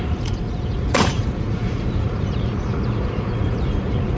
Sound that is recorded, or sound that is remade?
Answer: remade